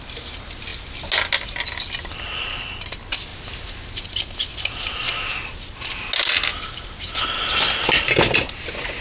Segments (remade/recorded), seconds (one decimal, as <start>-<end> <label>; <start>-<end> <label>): 0.0-9.0 recorded